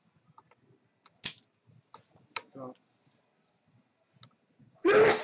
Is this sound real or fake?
real